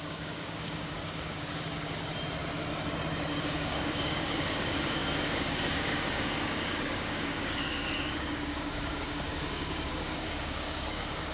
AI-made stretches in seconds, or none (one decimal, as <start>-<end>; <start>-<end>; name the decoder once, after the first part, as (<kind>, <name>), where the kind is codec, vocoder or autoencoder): 0.0-2.1 (codec, DAC); 3.4-11.3